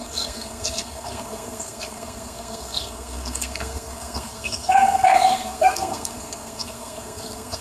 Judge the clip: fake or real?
fake